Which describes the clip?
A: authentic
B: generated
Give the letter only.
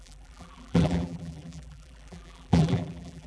B